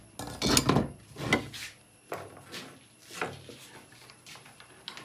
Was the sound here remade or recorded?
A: recorded